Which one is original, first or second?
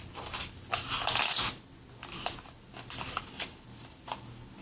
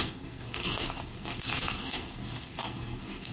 first